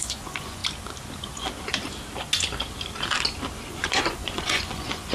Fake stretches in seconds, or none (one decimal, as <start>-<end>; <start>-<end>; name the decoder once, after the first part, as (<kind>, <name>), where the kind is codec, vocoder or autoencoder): 0.0-0.6 (vocoder, Vocos); 3.7-5.1